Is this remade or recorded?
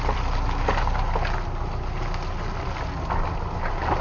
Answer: recorded